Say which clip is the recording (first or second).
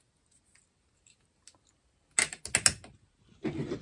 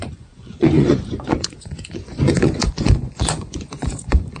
first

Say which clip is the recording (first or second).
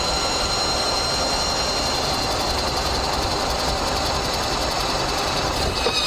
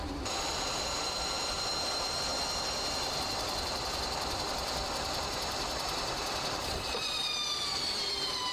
first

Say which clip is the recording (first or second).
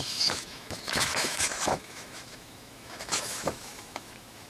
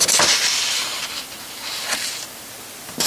second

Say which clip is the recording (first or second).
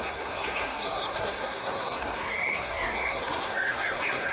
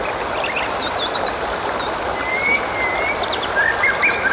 second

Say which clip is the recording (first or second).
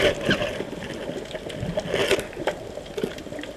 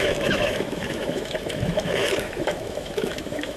first